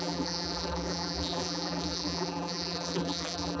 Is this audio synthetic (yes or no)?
yes